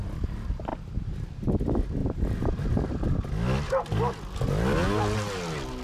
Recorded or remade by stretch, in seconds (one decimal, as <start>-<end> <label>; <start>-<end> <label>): 0.0-0.7 recorded; 0.7-1.4 remade; 1.4-2.0 recorded; 2.0-2.7 remade; 2.7-5.8 recorded